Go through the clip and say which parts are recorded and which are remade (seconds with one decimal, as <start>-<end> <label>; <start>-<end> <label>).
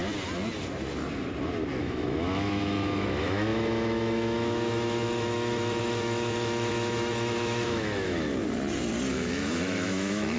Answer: 0.0-1.8 recorded; 1.8-8.3 remade; 8.3-9.1 recorded; 9.1-10.4 remade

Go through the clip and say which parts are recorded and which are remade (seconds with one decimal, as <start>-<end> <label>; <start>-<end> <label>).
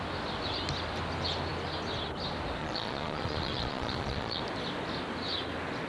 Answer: 0.0-2.6 recorded; 2.6-4.4 remade; 4.4-5.9 recorded